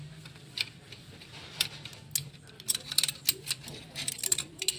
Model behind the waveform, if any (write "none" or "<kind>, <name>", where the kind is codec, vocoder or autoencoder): none